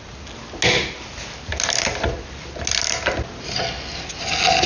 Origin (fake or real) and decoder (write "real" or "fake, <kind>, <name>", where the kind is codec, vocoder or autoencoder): real